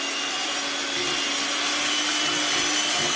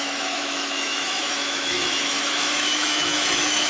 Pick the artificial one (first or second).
second